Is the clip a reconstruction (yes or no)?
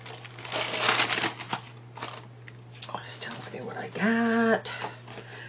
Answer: no